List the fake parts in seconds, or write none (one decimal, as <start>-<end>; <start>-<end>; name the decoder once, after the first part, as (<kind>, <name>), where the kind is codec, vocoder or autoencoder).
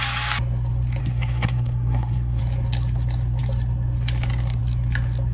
1.0-2.4 (codec, SNAC)